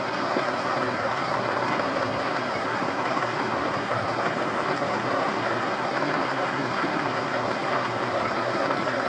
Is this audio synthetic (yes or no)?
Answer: yes